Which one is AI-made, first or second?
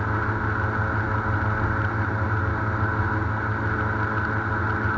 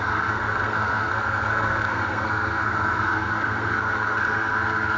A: second